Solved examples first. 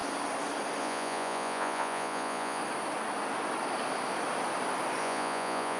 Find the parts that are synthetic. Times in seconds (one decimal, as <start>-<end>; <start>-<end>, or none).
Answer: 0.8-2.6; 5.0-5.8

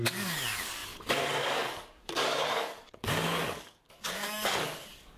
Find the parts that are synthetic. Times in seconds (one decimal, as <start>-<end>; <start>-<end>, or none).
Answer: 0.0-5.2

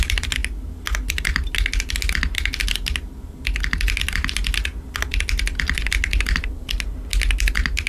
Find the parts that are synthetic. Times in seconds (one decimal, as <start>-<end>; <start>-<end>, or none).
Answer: none